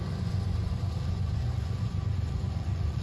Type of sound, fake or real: fake